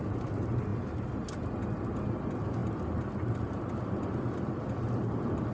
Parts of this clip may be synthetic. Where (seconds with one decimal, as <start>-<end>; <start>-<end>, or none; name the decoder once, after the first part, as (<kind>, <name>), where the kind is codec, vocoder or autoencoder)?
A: 2.6-4.5 (vocoder, BigVGAN v2)